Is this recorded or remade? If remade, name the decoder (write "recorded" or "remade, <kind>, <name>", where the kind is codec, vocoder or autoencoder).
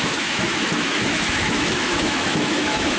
remade, autoencoder, DAC-VAE